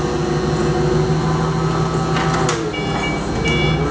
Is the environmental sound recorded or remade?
recorded